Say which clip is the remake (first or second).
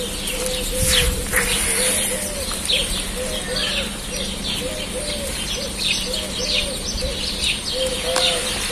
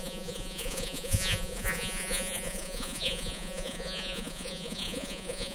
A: second